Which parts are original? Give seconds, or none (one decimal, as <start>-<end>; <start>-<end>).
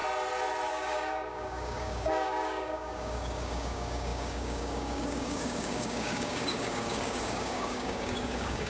0.0-0.7